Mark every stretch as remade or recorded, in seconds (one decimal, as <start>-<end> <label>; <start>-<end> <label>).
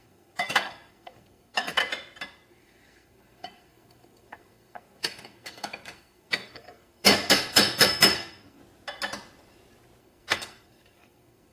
0.0-1.8 remade; 1.8-2.5 recorded; 2.5-8.6 remade; 8.6-10.0 recorded; 10.0-11.5 remade